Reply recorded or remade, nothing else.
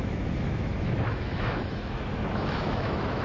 remade